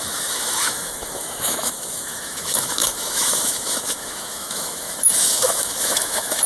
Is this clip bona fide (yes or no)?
no